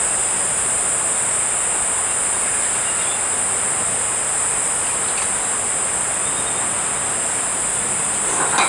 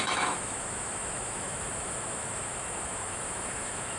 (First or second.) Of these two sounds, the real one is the first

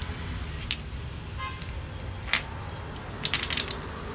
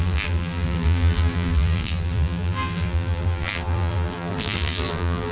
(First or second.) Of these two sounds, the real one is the first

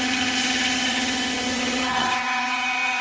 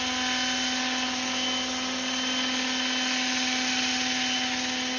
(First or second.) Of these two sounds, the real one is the second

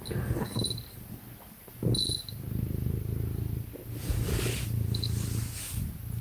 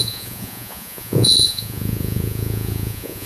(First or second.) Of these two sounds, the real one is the first